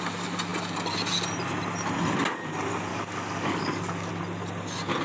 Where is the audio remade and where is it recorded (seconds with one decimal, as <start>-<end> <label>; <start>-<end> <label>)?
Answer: 0.0-2.9 recorded; 2.9-4.1 remade; 4.1-5.0 recorded